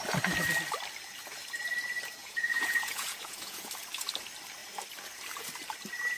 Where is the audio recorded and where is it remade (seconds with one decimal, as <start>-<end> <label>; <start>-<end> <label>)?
0.0-2.2 recorded; 2.2-3.7 remade; 3.7-6.2 recorded